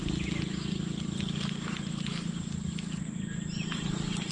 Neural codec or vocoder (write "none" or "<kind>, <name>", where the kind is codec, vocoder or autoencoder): none